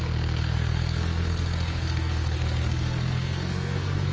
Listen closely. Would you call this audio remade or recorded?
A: remade